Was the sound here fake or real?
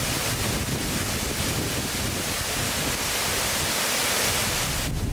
real